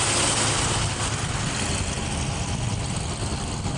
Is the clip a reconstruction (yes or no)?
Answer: no